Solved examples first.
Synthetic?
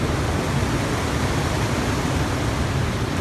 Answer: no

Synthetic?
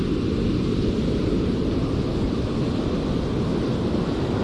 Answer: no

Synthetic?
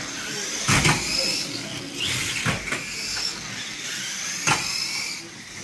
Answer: no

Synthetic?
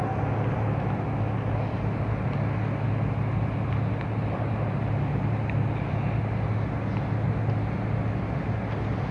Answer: no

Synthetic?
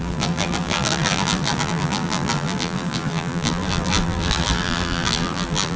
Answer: yes